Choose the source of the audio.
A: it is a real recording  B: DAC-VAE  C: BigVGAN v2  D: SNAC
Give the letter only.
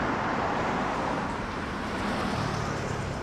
C